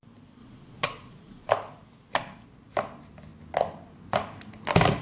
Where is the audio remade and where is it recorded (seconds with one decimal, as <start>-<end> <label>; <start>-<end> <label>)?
0.0-0.4 recorded; 0.4-1.5 remade; 1.5-5.0 recorded